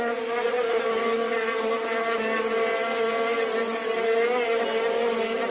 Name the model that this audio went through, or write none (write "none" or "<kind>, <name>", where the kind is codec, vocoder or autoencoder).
none